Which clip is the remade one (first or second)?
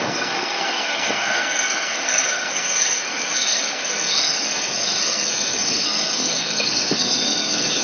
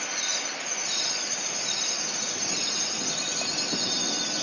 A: first